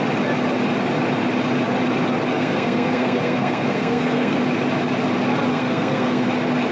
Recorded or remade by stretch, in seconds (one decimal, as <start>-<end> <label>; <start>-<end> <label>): 0.0-2.3 recorded; 2.3-4.4 remade; 4.4-5.5 recorded; 5.5-6.3 remade; 6.3-6.7 recorded